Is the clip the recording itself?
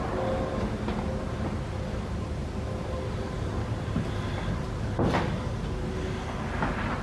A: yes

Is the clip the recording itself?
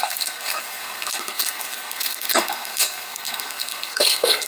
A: no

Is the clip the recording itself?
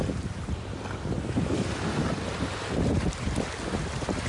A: yes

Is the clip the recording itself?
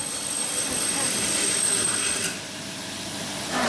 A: yes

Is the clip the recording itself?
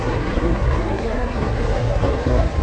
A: no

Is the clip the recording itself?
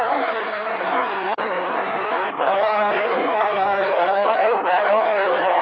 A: no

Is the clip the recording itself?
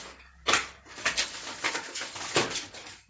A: yes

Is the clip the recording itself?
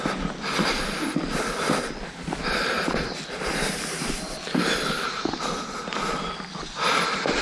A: yes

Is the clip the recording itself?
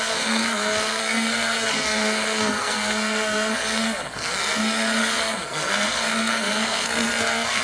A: no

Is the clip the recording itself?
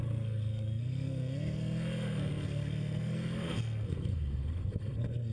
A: no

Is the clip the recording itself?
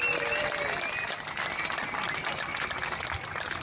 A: yes